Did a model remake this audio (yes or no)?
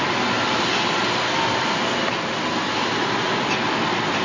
no